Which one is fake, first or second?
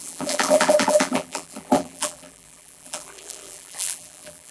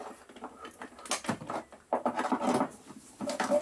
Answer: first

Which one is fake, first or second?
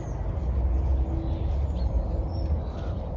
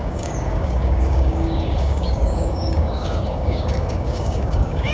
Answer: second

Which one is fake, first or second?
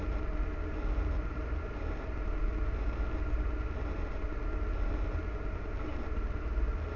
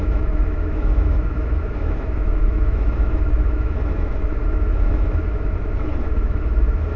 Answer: second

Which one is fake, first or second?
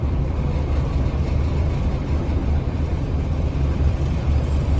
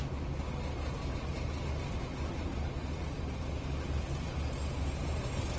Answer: first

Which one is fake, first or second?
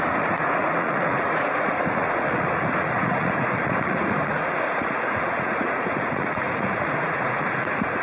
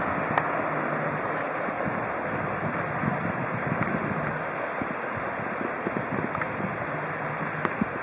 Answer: first